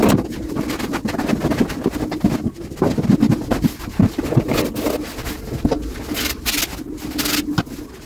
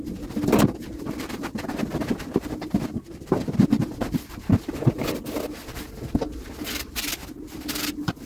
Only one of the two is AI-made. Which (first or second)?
second